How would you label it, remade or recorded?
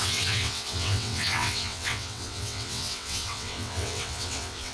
remade